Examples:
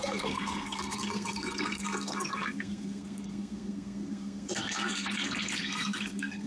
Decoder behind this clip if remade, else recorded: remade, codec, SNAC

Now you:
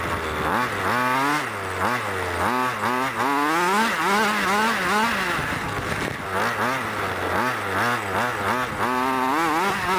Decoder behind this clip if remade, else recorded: recorded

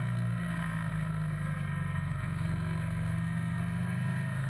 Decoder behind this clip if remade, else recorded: remade, codec, SNAC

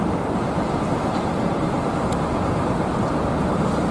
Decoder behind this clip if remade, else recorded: recorded